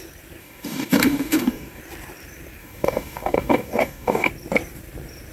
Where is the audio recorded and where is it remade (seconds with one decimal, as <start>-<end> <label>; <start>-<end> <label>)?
0.0-0.4 recorded; 0.4-1.8 remade; 1.8-2.6 recorded; 2.6-4.3 remade; 4.3-5.3 recorded

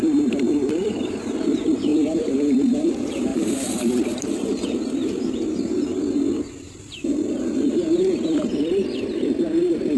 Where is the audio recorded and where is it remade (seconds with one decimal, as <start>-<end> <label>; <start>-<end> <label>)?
0.0-3.3 remade; 3.3-5.5 recorded; 5.5-5.9 remade; 5.9-6.4 recorded; 6.4-10.0 remade

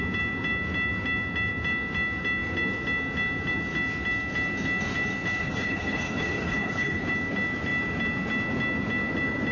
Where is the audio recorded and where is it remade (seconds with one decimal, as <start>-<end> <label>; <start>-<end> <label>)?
0.0-5.4 recorded; 5.4-7.1 remade; 7.1-9.5 recorded

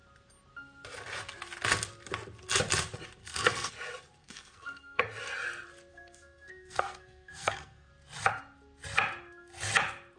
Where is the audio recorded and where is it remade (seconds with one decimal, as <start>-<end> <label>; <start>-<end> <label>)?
0.0-3.2 recorded; 3.2-3.7 remade; 3.7-4.2 recorded; 4.2-5.0 remade; 5.0-5.9 recorded; 5.9-7.9 remade; 7.9-10.2 recorded

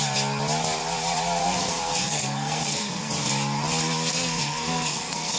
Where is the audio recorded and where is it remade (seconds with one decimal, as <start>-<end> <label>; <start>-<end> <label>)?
0.0-1.4 recorded; 1.4-3.1 remade; 3.1-4.1 recorded; 4.1-5.4 remade

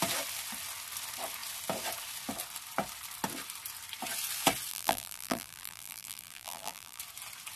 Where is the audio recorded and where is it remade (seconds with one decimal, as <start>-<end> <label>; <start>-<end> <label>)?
0.0-4.7 recorded; 4.7-7.0 remade; 7.0-7.6 recorded

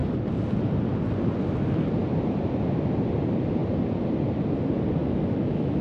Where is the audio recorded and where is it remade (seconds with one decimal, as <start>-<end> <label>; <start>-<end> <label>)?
0.0-5.0 recorded; 5.0-5.8 remade

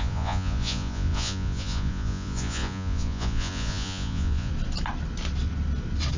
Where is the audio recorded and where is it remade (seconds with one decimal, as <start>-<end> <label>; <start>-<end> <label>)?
0.0-4.5 remade; 4.5-6.2 recorded